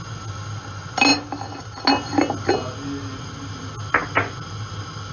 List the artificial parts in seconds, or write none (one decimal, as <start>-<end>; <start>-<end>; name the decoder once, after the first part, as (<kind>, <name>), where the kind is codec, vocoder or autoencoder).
none